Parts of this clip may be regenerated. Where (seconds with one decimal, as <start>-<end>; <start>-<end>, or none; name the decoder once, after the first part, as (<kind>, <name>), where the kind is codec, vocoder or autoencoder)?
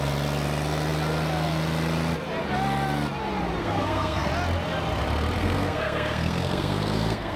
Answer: 3.6-4.3 (codec, SNAC); 5.4-7.4